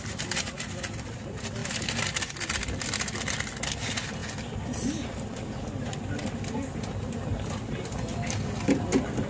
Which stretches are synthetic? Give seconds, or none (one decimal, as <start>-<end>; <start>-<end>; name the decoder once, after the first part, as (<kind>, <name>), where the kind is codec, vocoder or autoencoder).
none